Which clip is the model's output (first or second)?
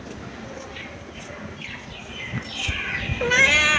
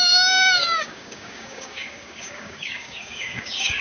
second